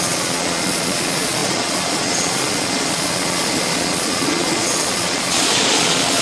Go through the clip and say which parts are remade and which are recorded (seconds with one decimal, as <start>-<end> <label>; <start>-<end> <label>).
0.0-6.2 remade

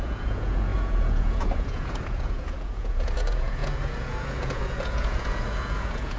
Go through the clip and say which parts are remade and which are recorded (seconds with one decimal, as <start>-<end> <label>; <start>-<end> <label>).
0.0-6.2 remade

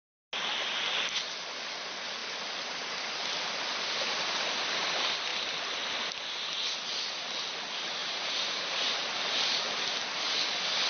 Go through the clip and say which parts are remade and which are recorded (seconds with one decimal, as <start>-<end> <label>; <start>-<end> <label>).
0.0-8.0 recorded; 8.0-8.9 remade; 8.9-10.9 recorded

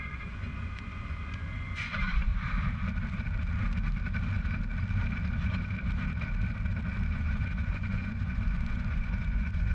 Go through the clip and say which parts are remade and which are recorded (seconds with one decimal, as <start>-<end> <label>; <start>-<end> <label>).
0.0-2.3 remade; 2.3-7.1 recorded; 7.1-9.7 remade